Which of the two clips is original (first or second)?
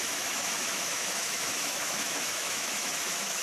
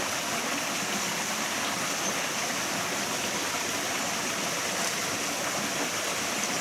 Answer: second